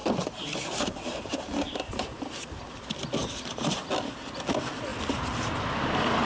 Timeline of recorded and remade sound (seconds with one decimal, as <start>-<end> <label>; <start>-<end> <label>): 0.0-1.9 remade; 1.9-3.2 recorded; 3.2-3.8 remade; 3.8-6.3 recorded